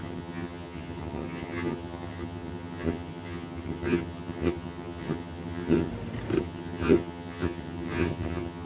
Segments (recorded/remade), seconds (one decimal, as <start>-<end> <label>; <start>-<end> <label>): 0.0-5.9 remade; 5.9-6.4 recorded; 6.4-8.7 remade